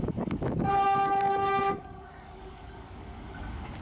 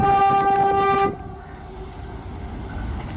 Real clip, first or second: second